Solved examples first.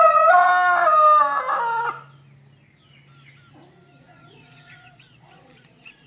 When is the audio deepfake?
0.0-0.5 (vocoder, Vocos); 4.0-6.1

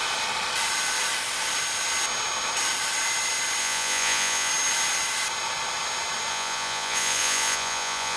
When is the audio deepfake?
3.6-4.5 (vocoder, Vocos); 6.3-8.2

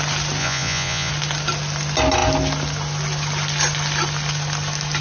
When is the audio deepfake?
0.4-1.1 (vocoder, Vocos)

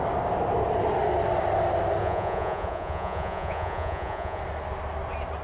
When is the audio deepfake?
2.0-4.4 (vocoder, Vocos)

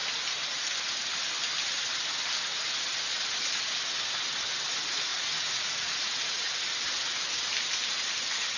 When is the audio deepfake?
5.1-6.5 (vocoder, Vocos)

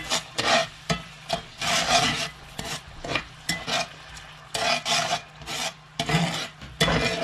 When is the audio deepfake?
2.1-3.3 (vocoder, Vocos)

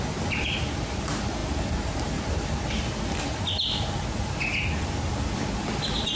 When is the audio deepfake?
none